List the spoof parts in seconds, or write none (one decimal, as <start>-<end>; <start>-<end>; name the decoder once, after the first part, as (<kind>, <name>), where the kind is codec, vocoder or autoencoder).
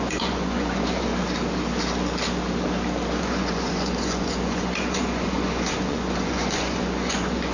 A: 0.0-1.1 (vocoder, Vocos); 3.2-7.5